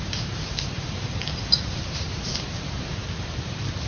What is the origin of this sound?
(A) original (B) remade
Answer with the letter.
B